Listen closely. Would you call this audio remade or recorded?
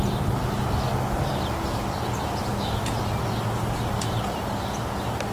recorded